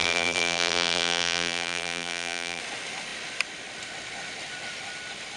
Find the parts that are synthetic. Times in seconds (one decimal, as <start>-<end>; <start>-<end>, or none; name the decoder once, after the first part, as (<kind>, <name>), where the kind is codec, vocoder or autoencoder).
0.0-2.6 (vocoder, BigVGAN v2)